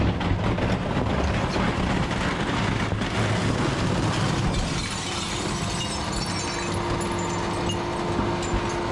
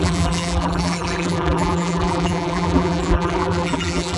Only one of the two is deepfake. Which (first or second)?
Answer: second